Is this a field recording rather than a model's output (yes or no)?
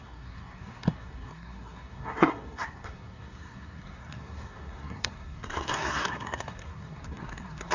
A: no